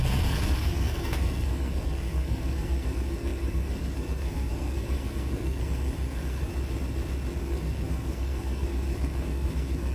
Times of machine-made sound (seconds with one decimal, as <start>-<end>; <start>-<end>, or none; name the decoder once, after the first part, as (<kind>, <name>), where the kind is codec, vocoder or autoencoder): 0.0-6.5 (codec, SNAC); 7.4-9.9